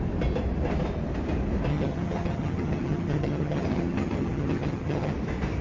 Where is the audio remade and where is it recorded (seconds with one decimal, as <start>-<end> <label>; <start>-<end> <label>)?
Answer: 0.0-1.7 recorded; 1.7-5.1 remade; 5.1-5.6 recorded